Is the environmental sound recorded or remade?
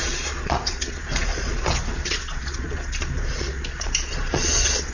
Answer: remade